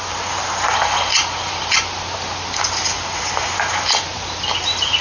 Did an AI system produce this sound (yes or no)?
no